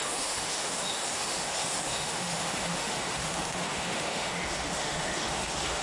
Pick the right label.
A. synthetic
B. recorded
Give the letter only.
A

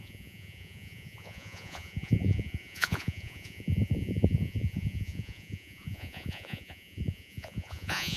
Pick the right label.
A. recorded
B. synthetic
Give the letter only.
B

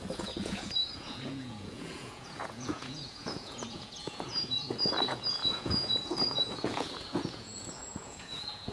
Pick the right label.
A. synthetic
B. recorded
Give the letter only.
A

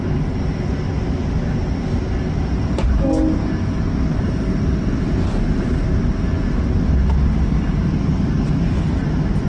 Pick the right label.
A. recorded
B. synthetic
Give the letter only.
A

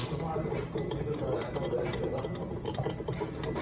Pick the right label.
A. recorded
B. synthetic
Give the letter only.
A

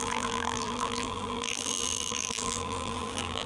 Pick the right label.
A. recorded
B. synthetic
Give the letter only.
B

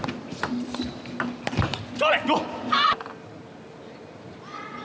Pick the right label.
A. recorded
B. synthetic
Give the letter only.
A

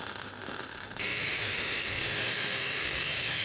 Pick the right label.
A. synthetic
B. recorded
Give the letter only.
A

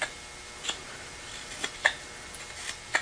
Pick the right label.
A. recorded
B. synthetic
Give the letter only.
A